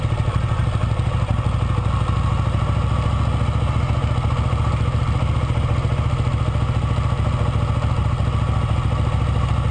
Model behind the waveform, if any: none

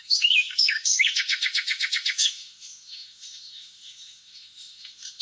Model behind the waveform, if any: autoencoder, DAC-VAE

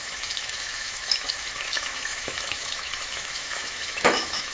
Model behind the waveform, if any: autoencoder, DAC-VAE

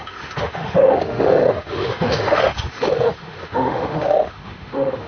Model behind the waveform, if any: autoencoder, DAC-VAE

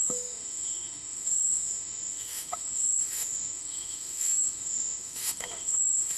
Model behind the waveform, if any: autoencoder, DAC-VAE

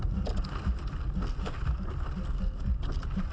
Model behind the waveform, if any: none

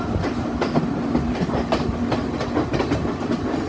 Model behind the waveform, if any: none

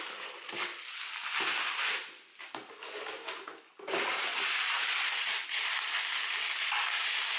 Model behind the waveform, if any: none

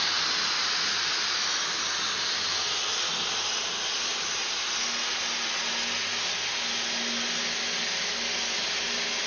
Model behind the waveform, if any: none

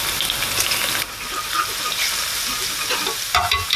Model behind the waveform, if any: none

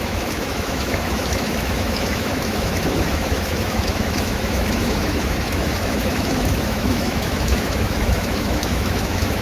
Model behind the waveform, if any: autoencoder, DAC-VAE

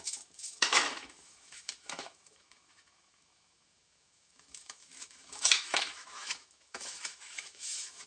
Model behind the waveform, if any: autoencoder, DAC-VAE